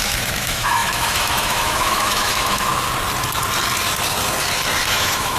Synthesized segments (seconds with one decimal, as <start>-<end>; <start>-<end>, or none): 0.0-2.7; 4.9-5.4